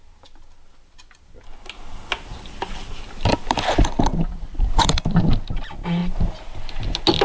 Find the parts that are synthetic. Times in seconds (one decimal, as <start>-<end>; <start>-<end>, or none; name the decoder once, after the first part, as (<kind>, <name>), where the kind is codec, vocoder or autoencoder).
2.3-5.2 (vocoder, BigVGAN v2)